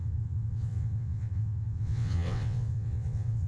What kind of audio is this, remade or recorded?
remade